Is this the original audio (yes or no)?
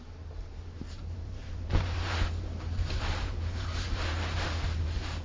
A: no